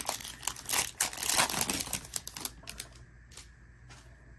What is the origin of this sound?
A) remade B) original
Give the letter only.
B